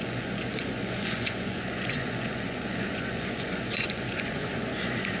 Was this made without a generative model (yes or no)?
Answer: no